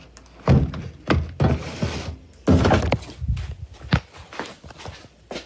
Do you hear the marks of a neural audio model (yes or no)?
no